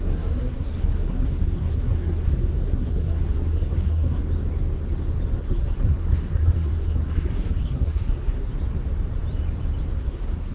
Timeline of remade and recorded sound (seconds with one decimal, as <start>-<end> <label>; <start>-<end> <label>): 0.0-4.2 remade; 4.2-5.4 recorded; 5.4-8.5 remade; 8.5-10.0 recorded; 10.0-10.5 remade